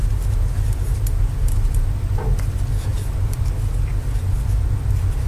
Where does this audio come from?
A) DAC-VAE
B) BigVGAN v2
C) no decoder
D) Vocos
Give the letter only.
C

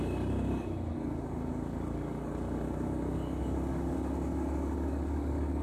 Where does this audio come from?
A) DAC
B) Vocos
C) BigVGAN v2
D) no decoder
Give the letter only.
A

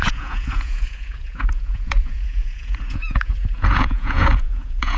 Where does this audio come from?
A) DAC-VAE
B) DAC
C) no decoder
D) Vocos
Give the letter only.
D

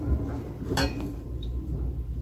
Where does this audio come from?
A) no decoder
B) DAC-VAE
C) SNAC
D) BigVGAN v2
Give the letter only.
D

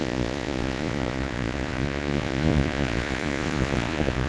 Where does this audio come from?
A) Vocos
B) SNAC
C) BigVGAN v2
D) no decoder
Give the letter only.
A